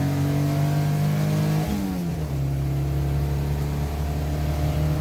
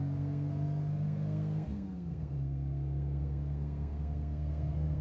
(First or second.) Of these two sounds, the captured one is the first